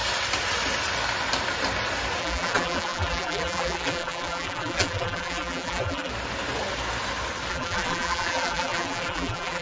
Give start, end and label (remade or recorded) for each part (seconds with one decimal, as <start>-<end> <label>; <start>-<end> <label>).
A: 0.0-2.2 recorded; 2.2-6.1 remade; 6.1-7.5 recorded; 7.5-9.6 remade